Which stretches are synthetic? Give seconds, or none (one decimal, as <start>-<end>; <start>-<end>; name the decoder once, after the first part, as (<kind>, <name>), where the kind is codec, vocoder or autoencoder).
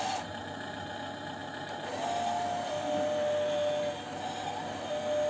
none